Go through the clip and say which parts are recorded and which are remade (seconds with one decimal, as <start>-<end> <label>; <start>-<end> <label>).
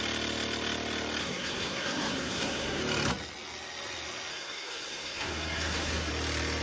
0.0-1.2 recorded; 1.2-2.8 remade; 2.8-4.3 recorded; 4.3-6.1 remade; 6.1-6.6 recorded